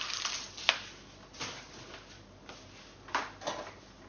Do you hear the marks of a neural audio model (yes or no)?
no